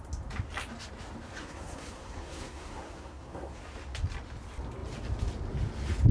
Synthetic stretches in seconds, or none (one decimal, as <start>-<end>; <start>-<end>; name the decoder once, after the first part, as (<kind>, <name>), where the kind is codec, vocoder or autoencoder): 1.4-3.6 (codec, SNAC)